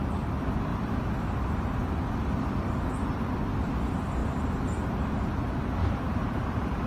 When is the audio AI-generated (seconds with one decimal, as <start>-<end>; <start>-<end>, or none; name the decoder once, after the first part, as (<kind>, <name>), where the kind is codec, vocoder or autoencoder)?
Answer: 0.7-1.2 (vocoder, BigVGAN v2); 5.8-6.9